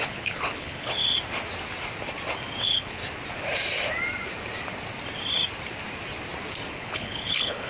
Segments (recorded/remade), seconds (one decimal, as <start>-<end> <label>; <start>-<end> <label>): 0.0-1.0 remade; 1.0-2.6 recorded; 2.6-3.0 remade; 3.0-6.7 recorded; 6.7-7.7 remade